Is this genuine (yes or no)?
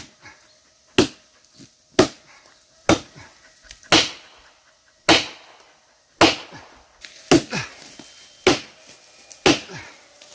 yes